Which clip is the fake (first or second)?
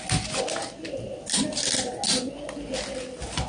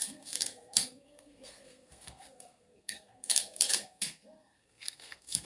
second